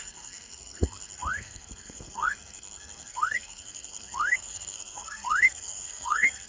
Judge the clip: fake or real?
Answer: fake